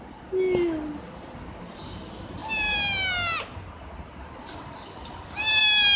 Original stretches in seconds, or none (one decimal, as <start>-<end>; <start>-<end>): 0.0-6.0